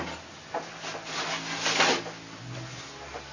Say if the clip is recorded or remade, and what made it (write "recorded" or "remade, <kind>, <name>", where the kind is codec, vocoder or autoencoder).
recorded